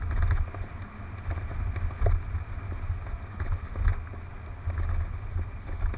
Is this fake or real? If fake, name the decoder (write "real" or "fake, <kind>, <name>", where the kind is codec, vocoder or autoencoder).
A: real